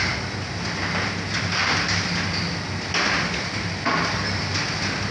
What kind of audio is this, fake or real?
real